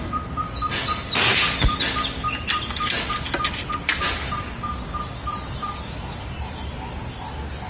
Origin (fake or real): real